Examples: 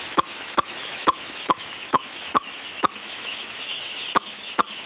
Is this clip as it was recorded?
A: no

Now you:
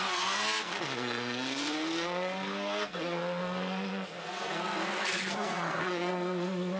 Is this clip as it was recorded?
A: no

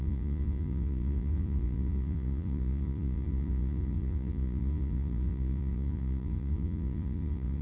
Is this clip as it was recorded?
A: no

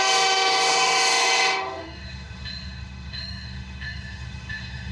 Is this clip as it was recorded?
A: no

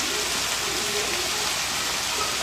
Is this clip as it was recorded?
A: yes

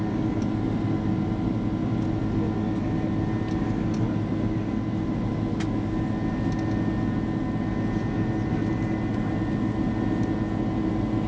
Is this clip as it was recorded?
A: yes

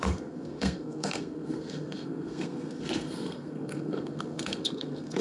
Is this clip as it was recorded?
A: no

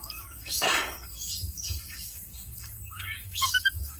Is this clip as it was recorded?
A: no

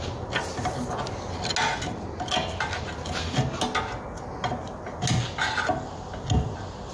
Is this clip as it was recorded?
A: yes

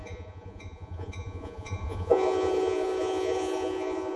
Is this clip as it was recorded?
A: no